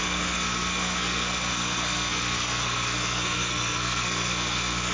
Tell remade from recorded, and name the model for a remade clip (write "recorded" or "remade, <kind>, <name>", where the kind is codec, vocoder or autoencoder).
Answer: remade, codec, SNAC